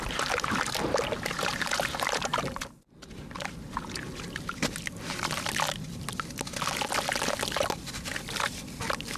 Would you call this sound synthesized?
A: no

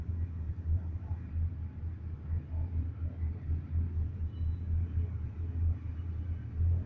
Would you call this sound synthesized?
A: no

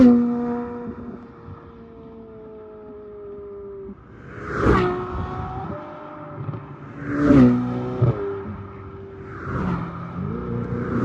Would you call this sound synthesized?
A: no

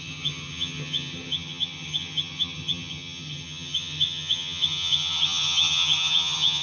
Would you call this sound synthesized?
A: yes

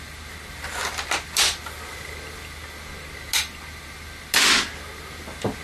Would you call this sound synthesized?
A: no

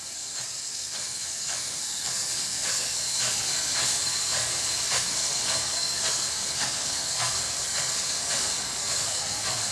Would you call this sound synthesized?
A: yes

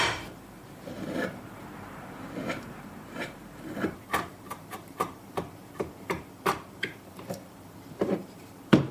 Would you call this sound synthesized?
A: yes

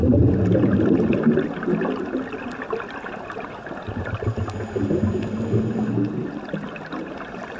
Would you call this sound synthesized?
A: no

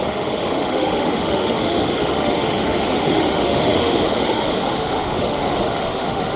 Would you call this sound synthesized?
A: yes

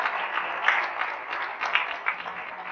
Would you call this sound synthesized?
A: no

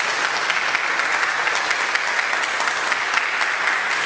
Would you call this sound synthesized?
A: no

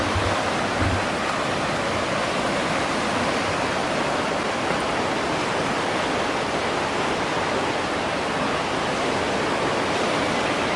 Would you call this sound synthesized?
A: no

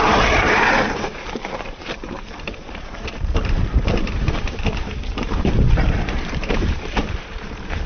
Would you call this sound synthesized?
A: yes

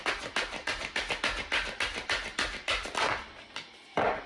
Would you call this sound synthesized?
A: no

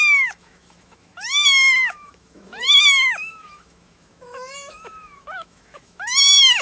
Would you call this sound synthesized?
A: yes